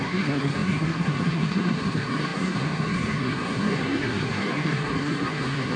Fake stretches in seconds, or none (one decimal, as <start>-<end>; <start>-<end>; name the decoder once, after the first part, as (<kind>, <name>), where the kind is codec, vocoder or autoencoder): 0.0-5.8 (codec, SNAC)